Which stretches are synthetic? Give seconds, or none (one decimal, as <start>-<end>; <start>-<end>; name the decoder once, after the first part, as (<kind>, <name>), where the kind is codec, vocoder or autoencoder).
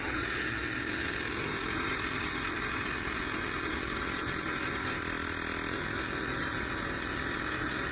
0.0-5.0 (vocoder, HiFi-GAN); 5.7-7.9